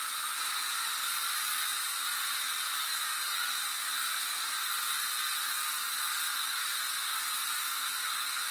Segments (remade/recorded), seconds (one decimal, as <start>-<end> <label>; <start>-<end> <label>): 0.0-8.5 recorded